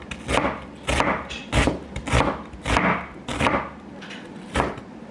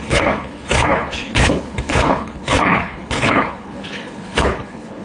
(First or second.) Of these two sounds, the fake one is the second